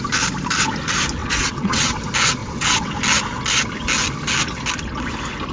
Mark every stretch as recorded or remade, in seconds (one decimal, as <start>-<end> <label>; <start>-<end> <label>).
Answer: 0.0-1.2 recorded; 1.2-2.0 remade; 2.0-2.4 recorded; 2.4-2.9 remade; 2.9-5.5 recorded